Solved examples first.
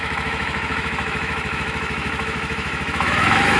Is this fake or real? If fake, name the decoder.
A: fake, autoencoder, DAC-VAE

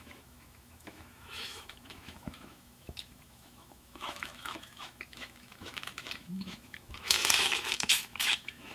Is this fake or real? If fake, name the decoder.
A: fake, autoencoder, DAC-VAE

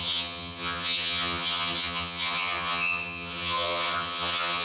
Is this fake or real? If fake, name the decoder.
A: fake, vocoder, HiFi-GAN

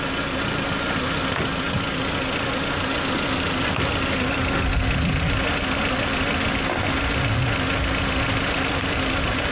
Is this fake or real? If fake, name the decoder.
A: real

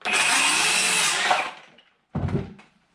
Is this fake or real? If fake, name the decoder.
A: real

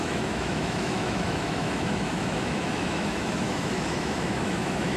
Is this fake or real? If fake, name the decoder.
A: fake, autoencoder, DAC-VAE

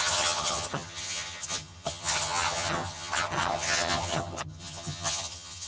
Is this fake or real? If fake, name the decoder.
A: fake, vocoder, HiFi-GAN